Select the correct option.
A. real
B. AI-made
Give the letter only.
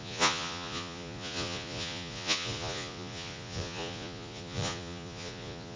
B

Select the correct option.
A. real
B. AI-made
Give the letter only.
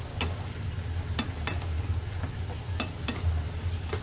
A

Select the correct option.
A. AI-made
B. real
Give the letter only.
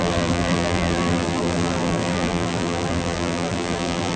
A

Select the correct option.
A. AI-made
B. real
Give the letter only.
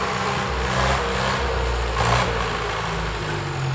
B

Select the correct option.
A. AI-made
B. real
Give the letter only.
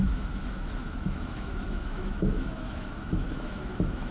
A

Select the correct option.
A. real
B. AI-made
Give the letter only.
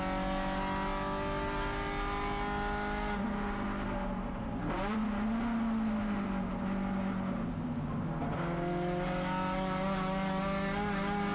A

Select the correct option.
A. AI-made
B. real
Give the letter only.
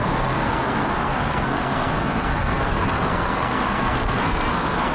A